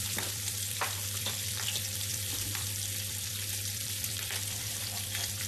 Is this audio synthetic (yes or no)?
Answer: yes